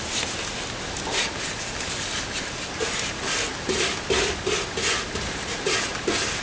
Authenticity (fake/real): real